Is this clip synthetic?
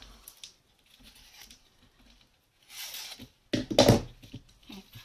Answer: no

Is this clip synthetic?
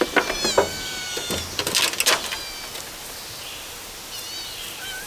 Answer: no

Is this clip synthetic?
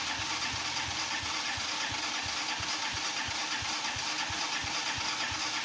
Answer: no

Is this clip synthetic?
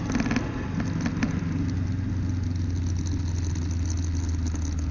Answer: no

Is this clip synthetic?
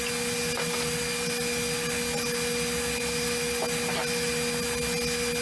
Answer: no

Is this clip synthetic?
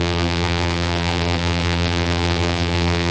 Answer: yes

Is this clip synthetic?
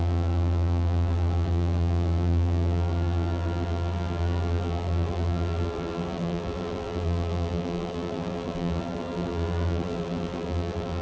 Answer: yes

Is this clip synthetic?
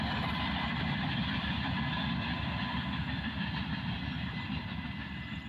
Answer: no